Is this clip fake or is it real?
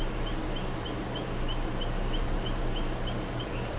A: fake